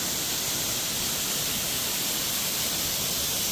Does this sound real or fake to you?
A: real